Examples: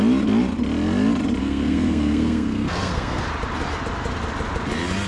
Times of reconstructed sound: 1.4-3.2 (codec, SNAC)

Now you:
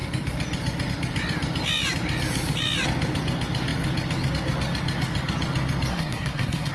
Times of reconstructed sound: 5.9-6.7 (codec, SNAC)